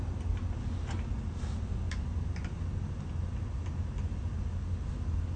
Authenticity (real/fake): real